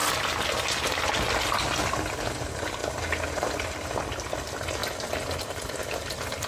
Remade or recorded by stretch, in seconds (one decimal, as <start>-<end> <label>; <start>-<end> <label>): 0.0-6.5 recorded